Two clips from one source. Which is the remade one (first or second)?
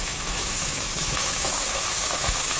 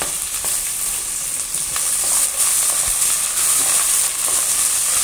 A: first